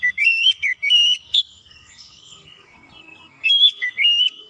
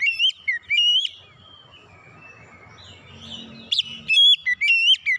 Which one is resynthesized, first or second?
first